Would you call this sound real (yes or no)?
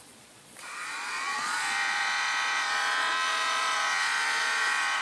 no